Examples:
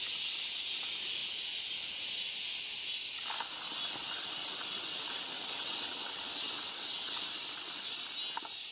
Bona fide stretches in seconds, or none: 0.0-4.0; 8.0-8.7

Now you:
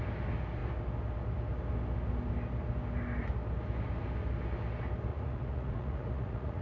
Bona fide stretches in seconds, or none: 0.0-5.1

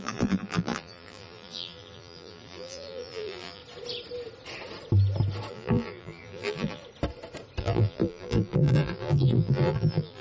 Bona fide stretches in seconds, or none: 3.6-5.5; 6.8-7.6

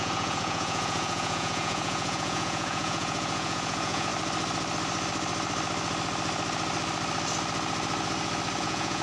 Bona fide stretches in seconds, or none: 4.1-8.6

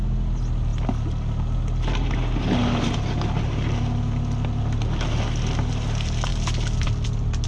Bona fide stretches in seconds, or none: 0.0-7.5

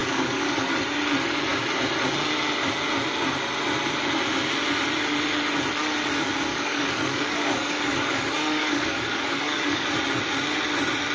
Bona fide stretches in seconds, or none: 0.8-6.5; 9.9-11.1

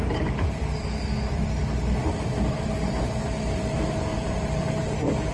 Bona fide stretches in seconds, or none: none

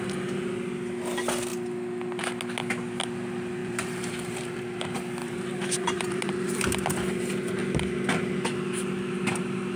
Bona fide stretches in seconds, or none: 0.0-3.6; 4.6-5.2; 6.6-9.8